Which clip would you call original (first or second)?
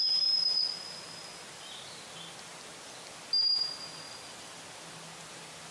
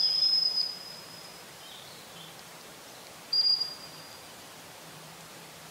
first